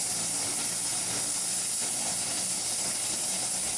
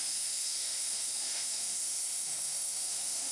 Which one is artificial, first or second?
second